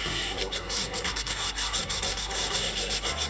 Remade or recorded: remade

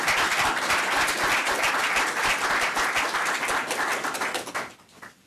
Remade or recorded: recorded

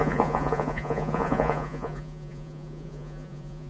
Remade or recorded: remade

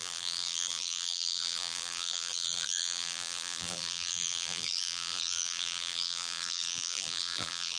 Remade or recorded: remade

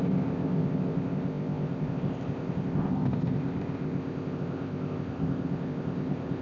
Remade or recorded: remade